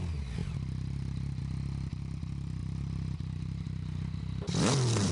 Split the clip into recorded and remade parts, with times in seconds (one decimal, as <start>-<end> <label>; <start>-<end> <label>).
0.0-0.4 recorded; 0.4-1.4 remade; 1.4-2.6 recorded; 2.6-4.2 remade; 4.2-5.1 recorded